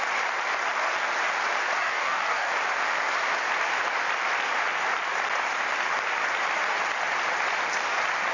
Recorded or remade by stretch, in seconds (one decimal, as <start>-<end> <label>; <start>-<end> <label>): 0.0-1.8 recorded; 1.8-2.5 remade; 2.5-8.3 recorded